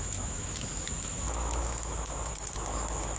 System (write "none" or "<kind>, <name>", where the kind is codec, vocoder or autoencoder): autoencoder, DAC-VAE